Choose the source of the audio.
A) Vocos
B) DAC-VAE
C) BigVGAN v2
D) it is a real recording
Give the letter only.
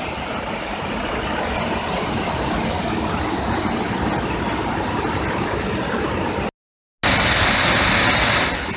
D